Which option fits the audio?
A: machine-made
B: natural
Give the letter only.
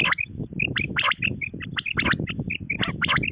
B